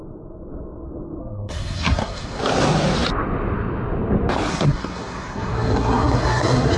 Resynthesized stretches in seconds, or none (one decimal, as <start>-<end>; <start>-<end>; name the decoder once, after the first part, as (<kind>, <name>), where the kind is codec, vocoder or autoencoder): 1.2-2.4 (codec, SNAC); 4.5-6.8